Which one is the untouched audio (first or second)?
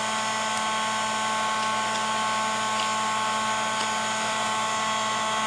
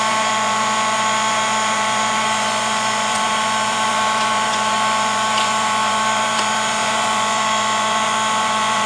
first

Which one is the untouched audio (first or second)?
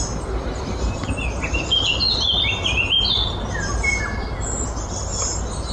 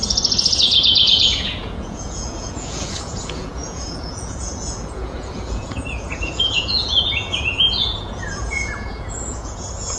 first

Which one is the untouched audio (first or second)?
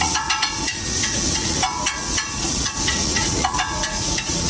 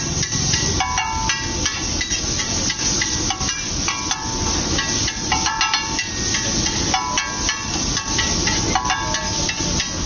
second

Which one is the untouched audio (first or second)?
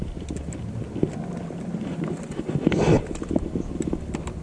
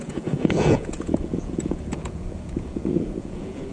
first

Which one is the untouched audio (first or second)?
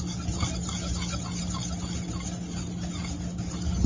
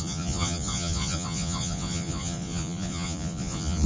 first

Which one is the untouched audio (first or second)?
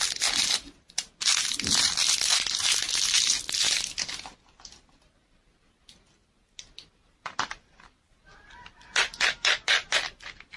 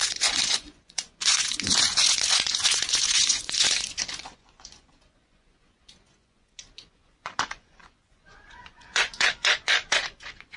first